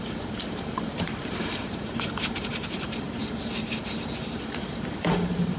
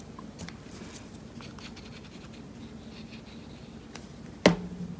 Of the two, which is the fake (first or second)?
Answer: first